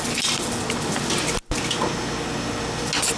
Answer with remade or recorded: recorded